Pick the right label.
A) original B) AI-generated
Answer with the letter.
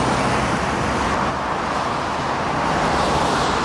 A